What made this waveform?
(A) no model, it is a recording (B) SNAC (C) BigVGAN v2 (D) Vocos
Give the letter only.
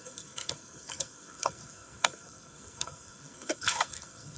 B